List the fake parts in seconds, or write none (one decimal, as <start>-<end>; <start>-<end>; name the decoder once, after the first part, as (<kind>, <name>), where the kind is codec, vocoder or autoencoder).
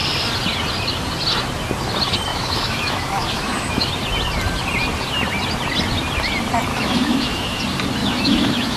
2.3-3.9 (autoencoder, DAC-VAE); 6.7-7.6; 8.0-8.8